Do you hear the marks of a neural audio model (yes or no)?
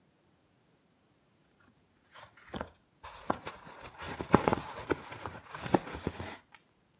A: yes